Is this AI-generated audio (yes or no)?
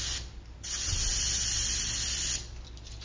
yes